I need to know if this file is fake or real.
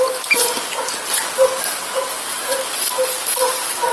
real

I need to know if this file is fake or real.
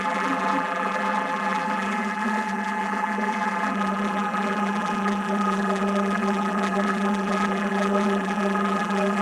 fake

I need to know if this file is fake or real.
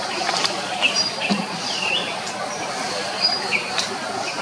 fake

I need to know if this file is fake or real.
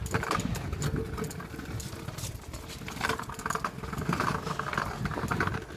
real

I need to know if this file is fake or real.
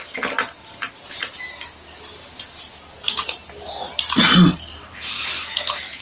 real